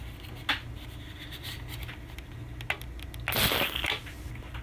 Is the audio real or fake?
real